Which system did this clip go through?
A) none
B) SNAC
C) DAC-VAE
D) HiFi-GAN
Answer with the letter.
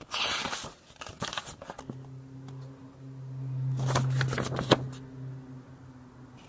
A